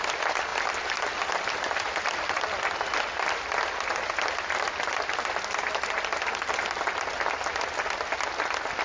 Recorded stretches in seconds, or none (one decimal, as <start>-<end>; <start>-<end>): 0.0-8.8